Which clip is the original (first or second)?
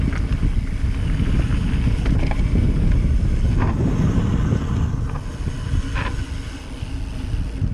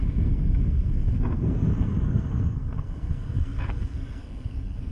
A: first